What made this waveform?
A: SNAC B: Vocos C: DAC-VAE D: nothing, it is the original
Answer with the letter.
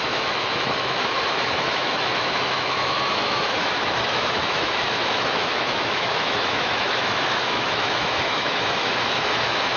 C